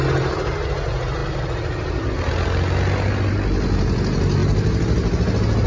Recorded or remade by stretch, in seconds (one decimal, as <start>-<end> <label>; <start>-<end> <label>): 0.0-5.7 recorded